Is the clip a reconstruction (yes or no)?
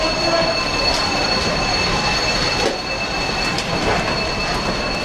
no